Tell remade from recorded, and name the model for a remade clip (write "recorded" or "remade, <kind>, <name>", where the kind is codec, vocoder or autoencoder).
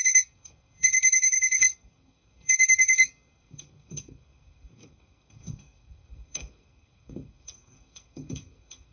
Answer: remade, codec, SNAC